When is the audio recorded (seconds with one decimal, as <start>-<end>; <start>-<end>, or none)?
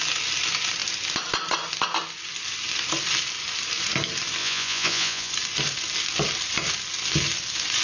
0.0-4.4; 5.3-7.8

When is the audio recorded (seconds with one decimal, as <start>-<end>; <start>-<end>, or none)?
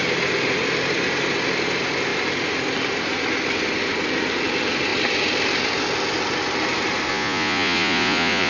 0.0-7.1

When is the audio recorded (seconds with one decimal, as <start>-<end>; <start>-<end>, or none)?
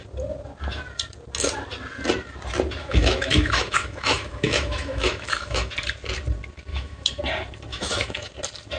0.0-2.8; 5.7-6.7; 7.2-7.7; 8.3-8.8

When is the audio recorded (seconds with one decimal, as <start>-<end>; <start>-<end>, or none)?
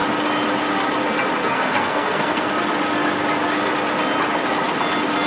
0.0-1.4; 2.5-5.3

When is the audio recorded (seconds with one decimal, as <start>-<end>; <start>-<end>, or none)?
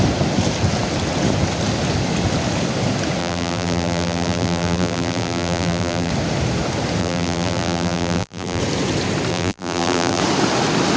0.0-3.2; 6.1-7.0; 8.6-9.3; 10.2-11.0